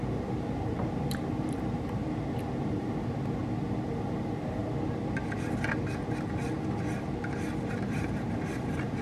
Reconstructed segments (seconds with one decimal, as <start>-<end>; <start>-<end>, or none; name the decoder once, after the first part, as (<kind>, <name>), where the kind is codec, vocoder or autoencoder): 0.0-2.0 (vocoder, BigVGAN v2); 2.6-3.4; 3.9-4.6; 7.7-9.0